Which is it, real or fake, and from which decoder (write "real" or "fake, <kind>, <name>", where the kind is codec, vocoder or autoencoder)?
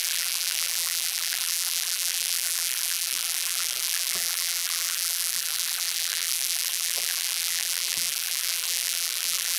fake, vocoder, BigVGAN v2